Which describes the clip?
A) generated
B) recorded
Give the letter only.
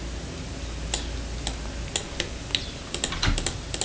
B